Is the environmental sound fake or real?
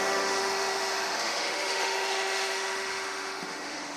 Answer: fake